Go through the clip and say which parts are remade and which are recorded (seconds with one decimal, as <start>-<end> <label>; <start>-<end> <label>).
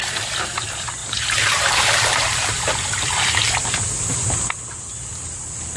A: 0.0-1.0 recorded; 1.0-4.5 remade; 4.5-5.8 recorded